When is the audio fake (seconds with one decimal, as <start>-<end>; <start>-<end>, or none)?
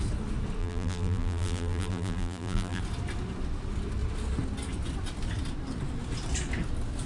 0.6-2.8